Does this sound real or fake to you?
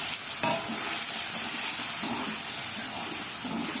real